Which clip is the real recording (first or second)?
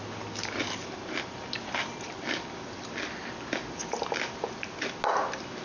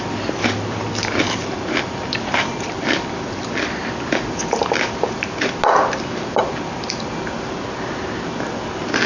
first